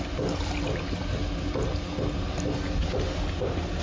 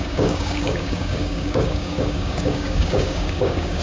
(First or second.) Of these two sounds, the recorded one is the first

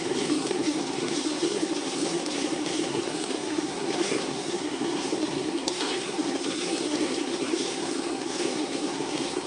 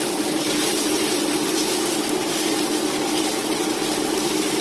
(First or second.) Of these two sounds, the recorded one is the second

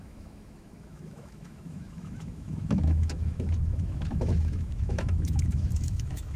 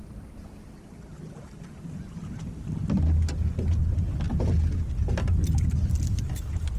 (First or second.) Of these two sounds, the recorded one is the second